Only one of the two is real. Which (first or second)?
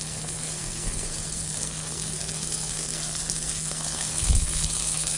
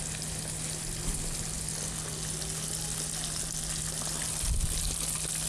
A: second